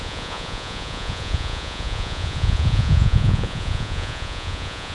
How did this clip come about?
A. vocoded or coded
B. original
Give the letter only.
A